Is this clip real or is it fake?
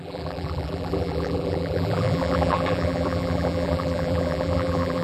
fake